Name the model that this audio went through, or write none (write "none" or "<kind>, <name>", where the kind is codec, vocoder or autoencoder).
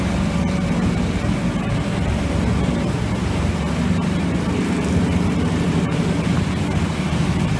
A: none